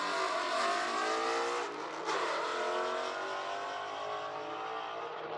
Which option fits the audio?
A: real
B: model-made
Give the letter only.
A